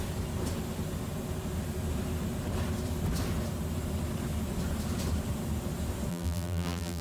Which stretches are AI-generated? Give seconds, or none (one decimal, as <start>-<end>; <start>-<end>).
6.1-7.0